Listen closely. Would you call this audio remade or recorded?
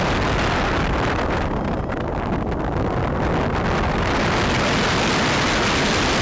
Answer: recorded